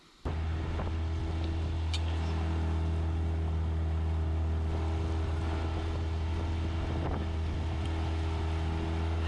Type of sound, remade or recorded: recorded